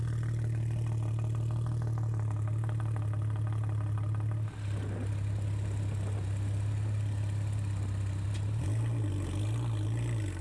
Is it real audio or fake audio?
real